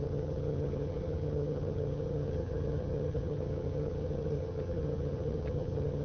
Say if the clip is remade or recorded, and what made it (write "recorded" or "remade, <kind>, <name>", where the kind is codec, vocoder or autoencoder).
remade, vocoder, HiFi-GAN